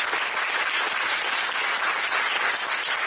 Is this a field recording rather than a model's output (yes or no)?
yes